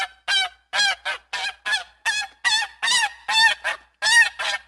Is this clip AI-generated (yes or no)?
no